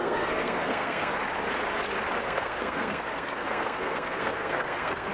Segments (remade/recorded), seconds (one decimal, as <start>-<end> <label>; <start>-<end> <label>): 0.0-1.1 remade; 1.1-2.2 recorded; 2.2-5.1 remade